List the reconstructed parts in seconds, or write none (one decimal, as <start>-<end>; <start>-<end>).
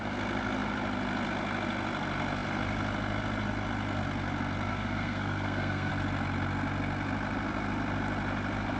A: 4.7-5.9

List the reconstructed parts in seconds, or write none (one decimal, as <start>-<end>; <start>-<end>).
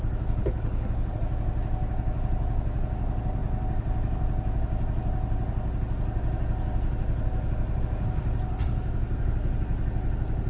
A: 0.4-1.2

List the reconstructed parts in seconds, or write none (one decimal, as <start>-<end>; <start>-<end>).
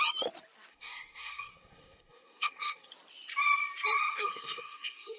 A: 0.7-2.9; 4.1-5.2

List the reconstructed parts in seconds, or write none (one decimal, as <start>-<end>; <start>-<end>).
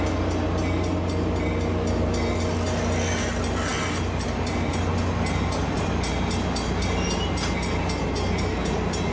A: none